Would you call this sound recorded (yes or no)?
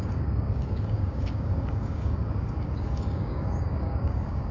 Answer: no